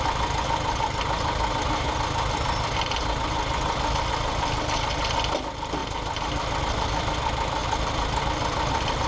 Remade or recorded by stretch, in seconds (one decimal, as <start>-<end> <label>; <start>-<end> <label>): 0.0-9.1 recorded